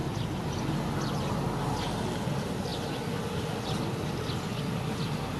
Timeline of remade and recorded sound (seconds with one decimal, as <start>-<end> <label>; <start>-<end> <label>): 0.0-0.6 remade; 0.6-5.4 recorded